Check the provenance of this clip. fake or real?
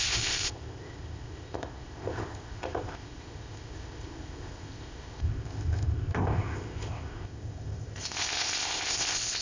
fake